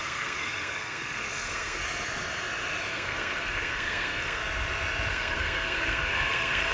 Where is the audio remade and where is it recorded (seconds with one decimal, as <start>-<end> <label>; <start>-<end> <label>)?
0.0-1.8 remade; 1.8-2.9 recorded; 2.9-4.4 remade; 4.4-5.1 recorded; 5.1-6.7 remade